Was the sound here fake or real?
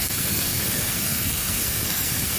fake